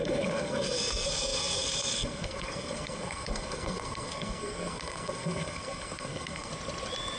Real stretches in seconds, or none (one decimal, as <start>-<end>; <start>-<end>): 6.5-7.2